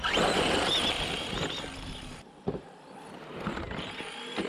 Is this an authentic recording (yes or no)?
yes